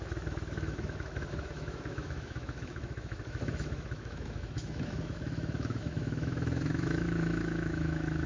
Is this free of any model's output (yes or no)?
no